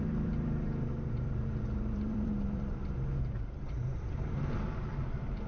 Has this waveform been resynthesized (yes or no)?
yes